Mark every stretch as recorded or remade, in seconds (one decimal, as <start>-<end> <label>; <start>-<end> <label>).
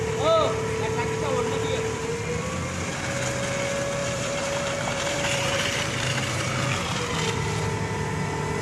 0.0-4.0 recorded; 4.0-6.5 remade; 6.5-8.6 recorded